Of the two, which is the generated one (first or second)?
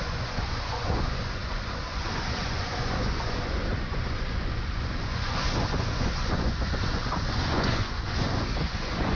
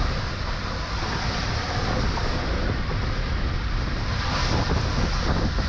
first